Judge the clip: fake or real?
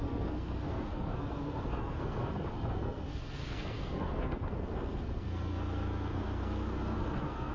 fake